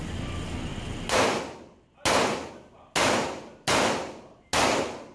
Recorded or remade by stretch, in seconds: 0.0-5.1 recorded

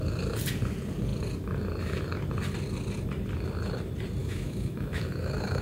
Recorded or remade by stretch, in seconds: 0.0-4.2 recorded; 4.2-5.6 remade